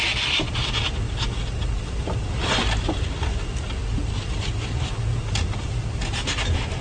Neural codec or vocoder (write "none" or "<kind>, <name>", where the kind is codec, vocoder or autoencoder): none